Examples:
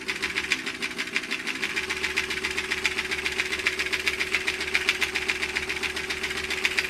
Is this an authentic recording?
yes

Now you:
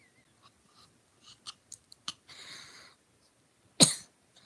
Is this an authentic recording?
yes